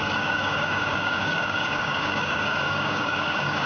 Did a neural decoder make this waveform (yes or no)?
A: yes